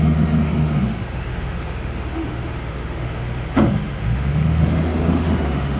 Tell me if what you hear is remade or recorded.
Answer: remade